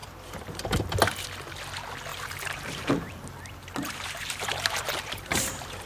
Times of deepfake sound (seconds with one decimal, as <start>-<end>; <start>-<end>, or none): 0.0-0.9; 2.1-5.9